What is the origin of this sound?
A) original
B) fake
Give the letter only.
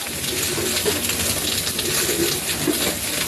A